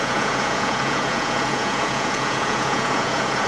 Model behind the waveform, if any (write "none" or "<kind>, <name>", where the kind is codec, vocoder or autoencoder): vocoder, Vocos